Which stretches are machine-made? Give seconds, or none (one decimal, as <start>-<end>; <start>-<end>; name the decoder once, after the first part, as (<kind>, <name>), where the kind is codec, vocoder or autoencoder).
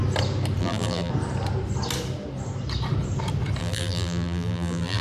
0.6-1.1 (vocoder, BigVGAN v2); 3.6-5.0